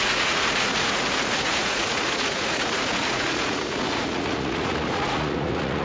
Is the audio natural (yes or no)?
no